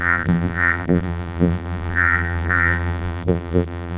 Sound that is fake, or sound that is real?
fake